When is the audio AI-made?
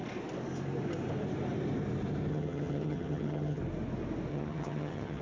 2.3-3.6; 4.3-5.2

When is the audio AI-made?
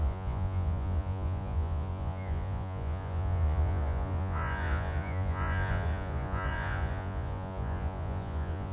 0.0-8.7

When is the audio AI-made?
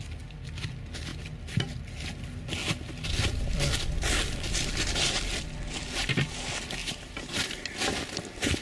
6.8-7.6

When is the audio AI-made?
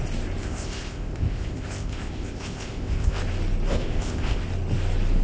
0.4-3.2; 3.7-4.4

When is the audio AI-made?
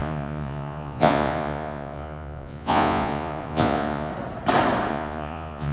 0.0-4.1; 4.9-5.7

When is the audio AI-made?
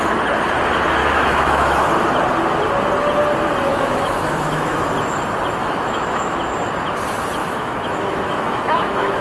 1.0-1.8; 3.7-4.9; 5.6-6.4; 7.4-9.2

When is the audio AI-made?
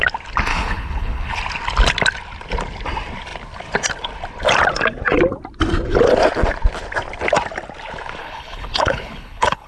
0.5-1.4; 8.2-9.7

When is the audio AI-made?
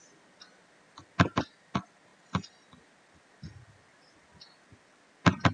none